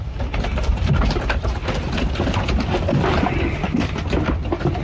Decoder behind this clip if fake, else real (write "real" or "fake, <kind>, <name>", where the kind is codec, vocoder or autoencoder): real